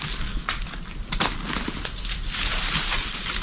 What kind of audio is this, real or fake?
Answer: real